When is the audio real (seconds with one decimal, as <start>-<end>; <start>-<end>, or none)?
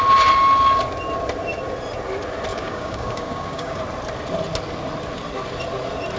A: 0.0-2.5; 3.8-6.2